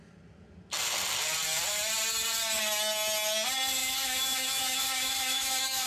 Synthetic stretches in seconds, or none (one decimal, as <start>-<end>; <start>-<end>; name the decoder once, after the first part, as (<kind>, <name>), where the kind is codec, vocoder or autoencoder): 3.8-5.9 (autoencoder, DAC-VAE)